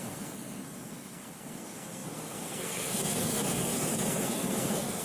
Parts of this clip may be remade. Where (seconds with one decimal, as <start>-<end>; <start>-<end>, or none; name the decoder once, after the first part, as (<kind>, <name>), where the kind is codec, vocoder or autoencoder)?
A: 0.0-5.0 (codec, SNAC)